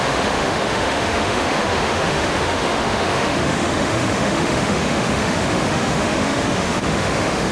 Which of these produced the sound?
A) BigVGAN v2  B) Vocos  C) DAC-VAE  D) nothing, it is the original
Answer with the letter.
C